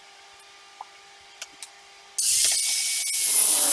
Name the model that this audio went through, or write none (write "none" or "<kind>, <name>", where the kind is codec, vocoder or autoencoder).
none